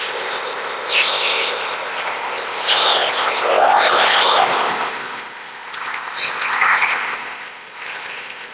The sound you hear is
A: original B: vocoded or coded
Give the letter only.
B